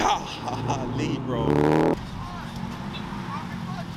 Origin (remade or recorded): recorded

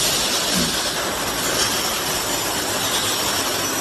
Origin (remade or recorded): recorded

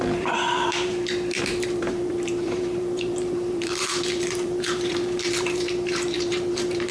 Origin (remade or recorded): remade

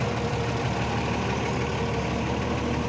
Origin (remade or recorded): recorded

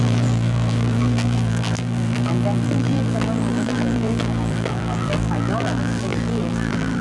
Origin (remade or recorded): remade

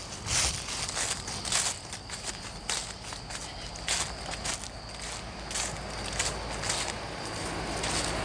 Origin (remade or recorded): recorded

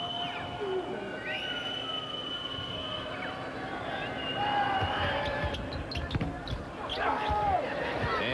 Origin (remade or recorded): recorded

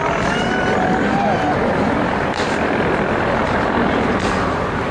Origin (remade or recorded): remade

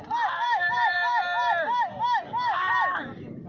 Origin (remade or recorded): remade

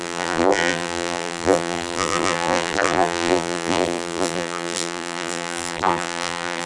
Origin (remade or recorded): remade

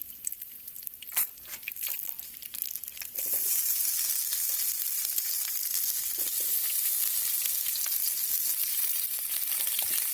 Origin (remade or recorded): recorded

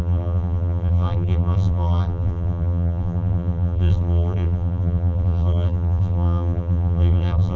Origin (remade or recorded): remade